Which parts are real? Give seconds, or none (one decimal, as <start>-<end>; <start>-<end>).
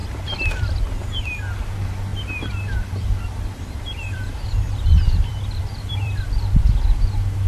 0.8-2.1; 6.2-7.5